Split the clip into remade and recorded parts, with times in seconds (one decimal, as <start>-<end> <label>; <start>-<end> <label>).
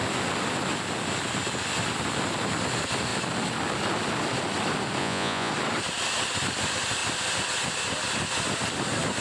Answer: 0.0-5.0 recorded; 5.0-5.5 remade; 5.5-9.2 recorded